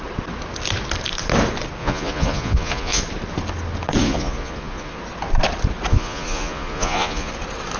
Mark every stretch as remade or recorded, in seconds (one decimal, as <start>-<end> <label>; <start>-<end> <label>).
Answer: 0.0-1.8 recorded; 1.8-3.0 remade; 3.0-4.0 recorded; 4.0-5.0 remade; 5.0-5.9 recorded; 5.9-7.3 remade; 7.3-7.8 recorded